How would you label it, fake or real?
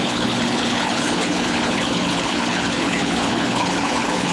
fake